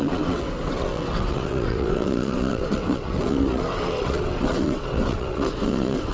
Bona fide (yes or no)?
no